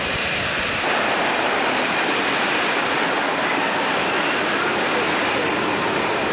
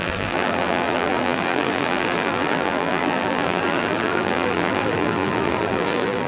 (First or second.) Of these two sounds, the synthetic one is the second